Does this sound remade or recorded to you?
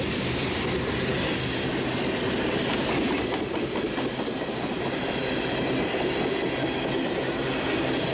recorded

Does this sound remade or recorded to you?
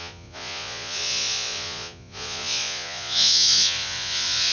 remade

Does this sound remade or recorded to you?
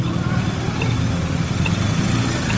recorded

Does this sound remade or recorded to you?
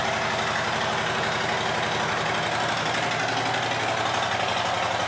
recorded